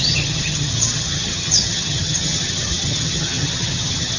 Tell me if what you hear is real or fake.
fake